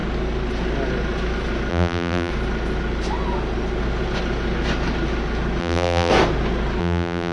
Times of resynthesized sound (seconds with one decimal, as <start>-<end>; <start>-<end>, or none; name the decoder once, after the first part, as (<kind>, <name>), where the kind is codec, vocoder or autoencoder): 1.7-2.3 (vocoder, BigVGAN v2); 5.6-6.1; 6.8-7.3